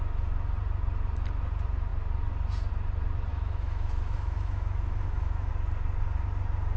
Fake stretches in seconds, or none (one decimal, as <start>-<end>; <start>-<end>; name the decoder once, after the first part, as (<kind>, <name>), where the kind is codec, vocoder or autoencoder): 3.3-5.5 (autoencoder, DAC-VAE)